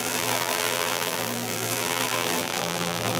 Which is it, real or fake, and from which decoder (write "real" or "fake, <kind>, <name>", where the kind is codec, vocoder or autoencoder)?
fake, vocoder, BigVGAN v2